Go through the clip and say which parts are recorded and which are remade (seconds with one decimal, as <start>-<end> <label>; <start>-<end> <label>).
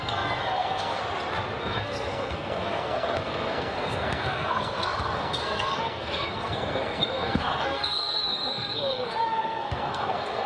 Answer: 0.0-1.0 remade; 1.0-1.6 recorded; 1.6-10.5 remade